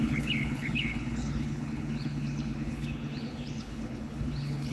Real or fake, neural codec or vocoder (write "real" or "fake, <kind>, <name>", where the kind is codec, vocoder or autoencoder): fake, codec, HILCodec